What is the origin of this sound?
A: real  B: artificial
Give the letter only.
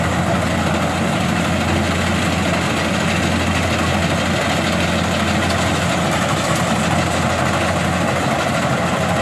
A